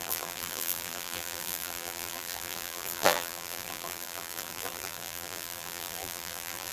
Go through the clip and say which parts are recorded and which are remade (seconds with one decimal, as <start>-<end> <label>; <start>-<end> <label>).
0.0-6.7 remade